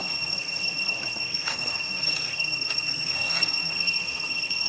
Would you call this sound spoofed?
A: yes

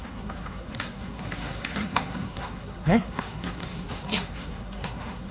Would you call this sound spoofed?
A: yes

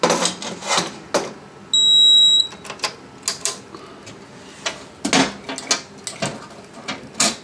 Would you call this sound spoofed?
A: no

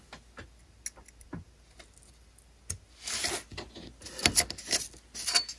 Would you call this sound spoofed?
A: no